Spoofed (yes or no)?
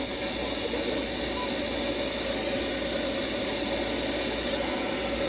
no